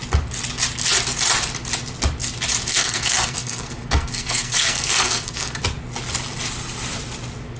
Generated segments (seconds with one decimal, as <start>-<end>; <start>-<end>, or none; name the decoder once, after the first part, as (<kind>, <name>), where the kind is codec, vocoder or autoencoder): 2.7-5.6 (codec, SNAC)